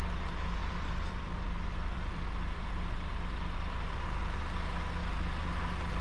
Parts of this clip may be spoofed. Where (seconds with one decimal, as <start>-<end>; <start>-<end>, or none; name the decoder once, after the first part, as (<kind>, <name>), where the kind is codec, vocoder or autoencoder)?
0.6-2.7 (vocoder, BigVGAN v2)